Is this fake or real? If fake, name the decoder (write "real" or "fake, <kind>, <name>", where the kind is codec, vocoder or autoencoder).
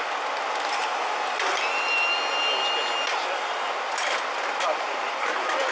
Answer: real